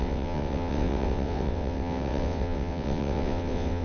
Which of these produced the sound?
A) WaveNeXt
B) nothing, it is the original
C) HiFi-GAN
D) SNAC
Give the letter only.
A